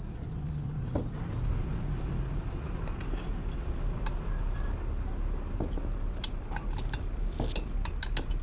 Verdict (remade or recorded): recorded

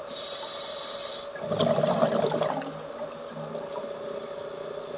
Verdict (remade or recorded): recorded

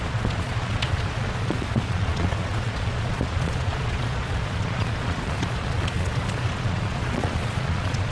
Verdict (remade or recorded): remade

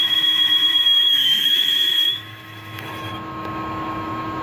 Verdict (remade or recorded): remade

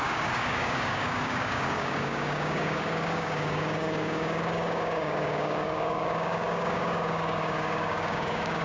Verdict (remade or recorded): remade